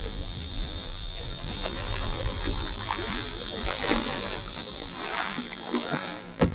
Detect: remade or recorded remade